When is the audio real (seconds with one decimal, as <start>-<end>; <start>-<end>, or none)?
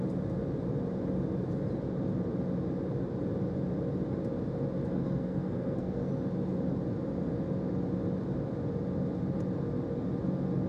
0.0-4.9; 6.1-10.7